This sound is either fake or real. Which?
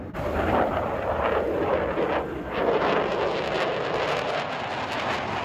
real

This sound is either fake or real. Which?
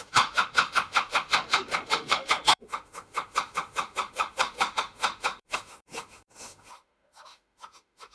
fake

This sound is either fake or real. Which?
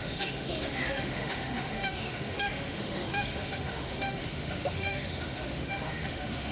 fake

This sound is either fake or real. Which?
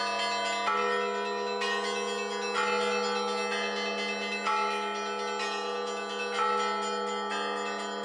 real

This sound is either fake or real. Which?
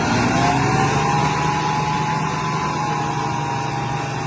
real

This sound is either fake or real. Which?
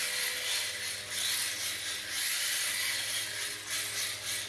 real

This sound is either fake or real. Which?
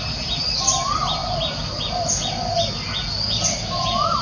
real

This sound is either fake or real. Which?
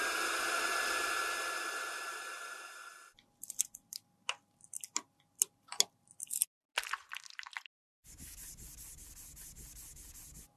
real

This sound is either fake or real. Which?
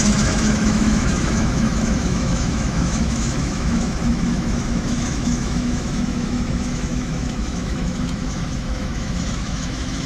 fake